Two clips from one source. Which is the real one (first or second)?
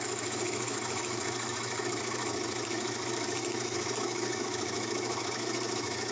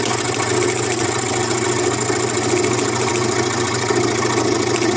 second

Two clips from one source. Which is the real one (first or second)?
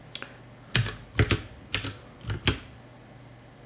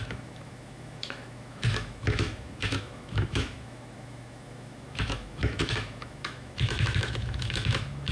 first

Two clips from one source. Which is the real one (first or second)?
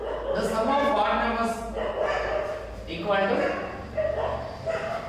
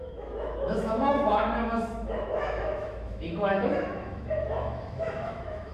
first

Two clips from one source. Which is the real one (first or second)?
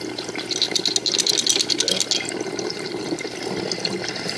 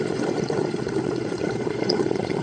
first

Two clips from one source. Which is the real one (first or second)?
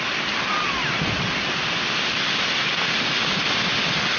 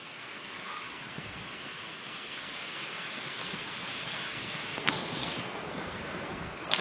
first